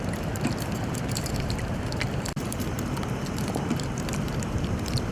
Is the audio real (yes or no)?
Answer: no